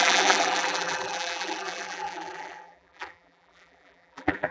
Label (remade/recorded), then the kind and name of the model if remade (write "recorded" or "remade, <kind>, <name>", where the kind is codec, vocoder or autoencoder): remade, vocoder, BigVGAN v2